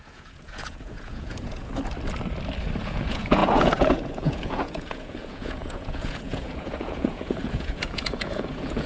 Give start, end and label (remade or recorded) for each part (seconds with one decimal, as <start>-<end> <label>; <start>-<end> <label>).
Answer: 0.0-1.7 remade; 1.7-2.8 recorded; 2.8-8.9 remade